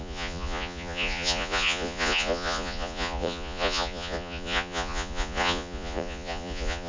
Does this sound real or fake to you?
fake